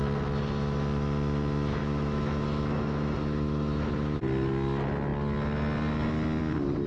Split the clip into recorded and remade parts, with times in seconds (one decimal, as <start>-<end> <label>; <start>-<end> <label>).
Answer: 0.0-1.8 recorded; 1.8-3.9 remade; 3.9-6.9 recorded